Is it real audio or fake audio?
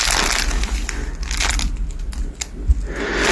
real